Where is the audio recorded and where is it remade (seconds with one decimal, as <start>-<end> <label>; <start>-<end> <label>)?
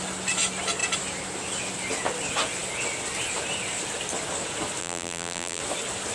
0.0-4.8 recorded; 4.8-5.6 remade; 5.6-6.1 recorded